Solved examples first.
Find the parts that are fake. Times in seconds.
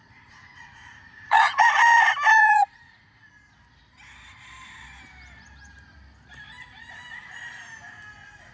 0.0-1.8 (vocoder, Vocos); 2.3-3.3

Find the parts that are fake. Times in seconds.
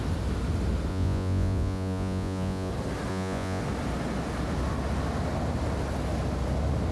0.9-2.7 (vocoder, Vocos); 3.1-3.6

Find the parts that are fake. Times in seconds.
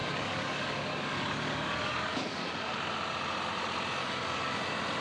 0.0-2.7 (codec, DAC); 4.0-4.6